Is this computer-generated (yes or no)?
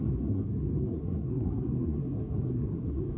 yes